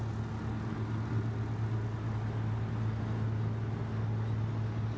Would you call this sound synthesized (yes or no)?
no